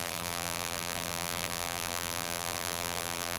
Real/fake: fake